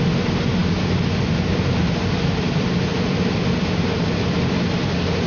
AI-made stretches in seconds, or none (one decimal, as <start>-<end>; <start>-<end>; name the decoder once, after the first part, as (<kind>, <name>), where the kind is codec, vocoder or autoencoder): 2.9-3.7 (vocoder, BigVGAN v2)